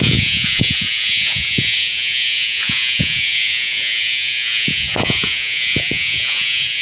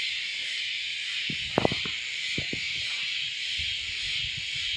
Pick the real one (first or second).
second